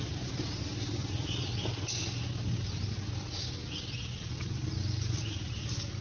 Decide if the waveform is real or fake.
real